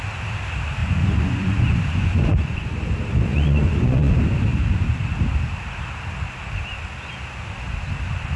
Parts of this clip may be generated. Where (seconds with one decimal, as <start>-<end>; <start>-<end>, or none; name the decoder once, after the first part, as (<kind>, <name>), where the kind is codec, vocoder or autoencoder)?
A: 0.8-2.8 (vocoder, Vocos); 3.3-4.1